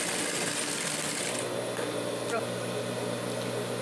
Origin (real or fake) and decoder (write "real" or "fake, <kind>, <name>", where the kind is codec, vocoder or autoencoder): real